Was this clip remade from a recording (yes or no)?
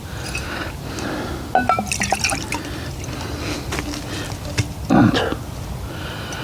no